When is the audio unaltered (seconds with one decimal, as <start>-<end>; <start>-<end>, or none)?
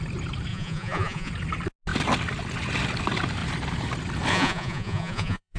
0.0-0.5; 1.3-4.3